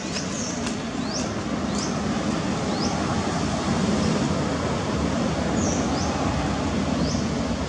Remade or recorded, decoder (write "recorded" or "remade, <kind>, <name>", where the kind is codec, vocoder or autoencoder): recorded